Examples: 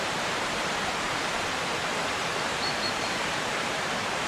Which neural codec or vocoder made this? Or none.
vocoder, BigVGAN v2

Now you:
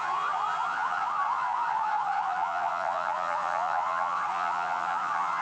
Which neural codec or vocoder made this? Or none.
vocoder, Vocos